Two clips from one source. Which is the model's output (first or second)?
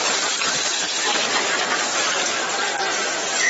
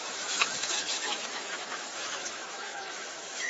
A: second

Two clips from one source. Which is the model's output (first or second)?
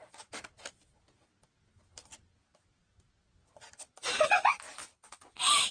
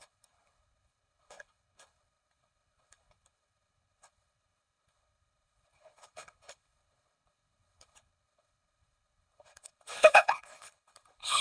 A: second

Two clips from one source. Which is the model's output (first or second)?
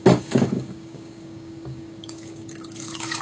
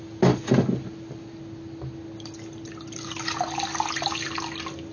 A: first